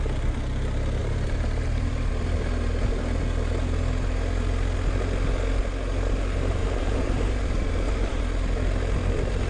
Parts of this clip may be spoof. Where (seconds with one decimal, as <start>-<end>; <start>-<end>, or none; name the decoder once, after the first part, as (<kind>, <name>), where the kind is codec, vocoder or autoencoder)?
1.0-2.1 (vocoder, BigVGAN v2); 6.6-8.2